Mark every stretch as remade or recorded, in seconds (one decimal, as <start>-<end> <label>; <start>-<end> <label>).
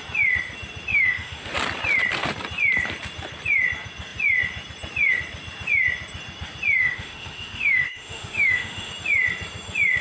0.0-0.9 recorded; 0.9-1.5 remade; 1.5-6.8 recorded; 6.8-8.9 remade; 8.9-10.0 recorded